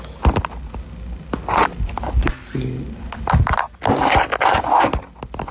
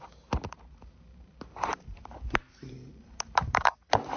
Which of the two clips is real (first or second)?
first